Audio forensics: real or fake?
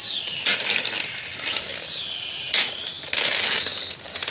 real